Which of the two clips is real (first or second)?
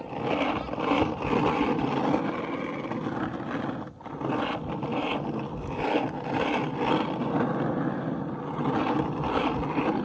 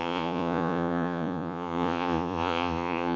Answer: first